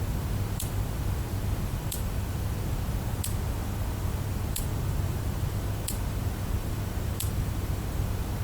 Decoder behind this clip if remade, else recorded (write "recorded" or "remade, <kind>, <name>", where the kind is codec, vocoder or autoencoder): remade, vocoder, BigVGAN v2